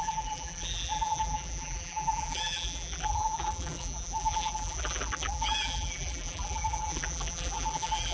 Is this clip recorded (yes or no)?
no